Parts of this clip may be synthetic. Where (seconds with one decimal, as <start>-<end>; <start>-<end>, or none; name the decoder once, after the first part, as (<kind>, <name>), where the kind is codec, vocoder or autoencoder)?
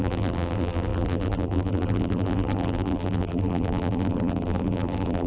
0.0-5.3 (vocoder, BigVGAN v2)